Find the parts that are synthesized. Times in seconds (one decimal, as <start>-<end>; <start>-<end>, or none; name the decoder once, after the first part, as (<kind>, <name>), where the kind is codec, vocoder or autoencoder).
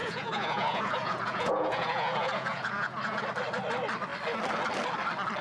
0.0-3.2 (vocoder, Vocos)